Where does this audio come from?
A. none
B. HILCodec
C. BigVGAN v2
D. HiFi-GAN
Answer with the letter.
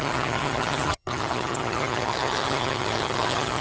D